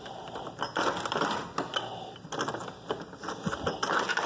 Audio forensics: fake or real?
real